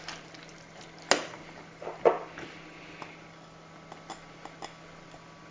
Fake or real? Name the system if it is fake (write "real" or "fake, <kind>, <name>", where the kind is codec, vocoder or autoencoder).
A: real